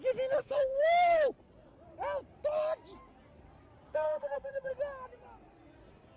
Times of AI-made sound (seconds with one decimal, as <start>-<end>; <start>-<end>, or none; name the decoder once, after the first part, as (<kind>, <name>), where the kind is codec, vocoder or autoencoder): 0.4-1.3 (codec, SNAC); 3.9-4.7